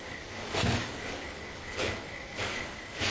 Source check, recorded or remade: remade